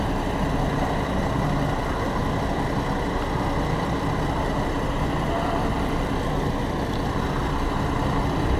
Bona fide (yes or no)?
yes